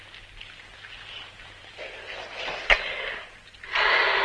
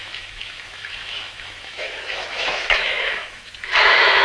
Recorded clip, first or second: first